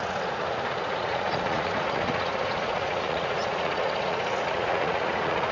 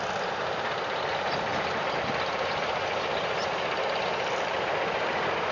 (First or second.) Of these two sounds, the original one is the second